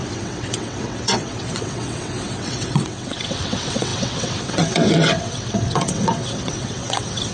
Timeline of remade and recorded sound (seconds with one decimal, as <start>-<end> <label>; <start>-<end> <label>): 0.0-7.3 remade